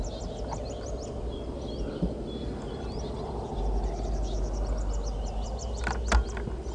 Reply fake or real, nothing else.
real